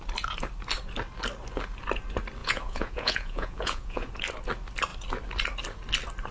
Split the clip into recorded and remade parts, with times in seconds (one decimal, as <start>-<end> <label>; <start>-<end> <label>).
0.0-2.4 recorded; 2.4-4.1 remade; 4.1-6.3 recorded